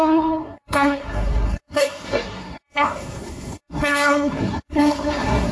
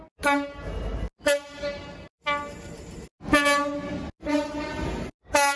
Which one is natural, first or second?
second